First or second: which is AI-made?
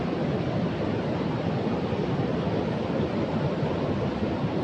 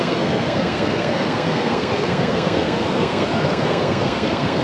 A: second